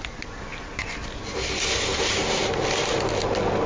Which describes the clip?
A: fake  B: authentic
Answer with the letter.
B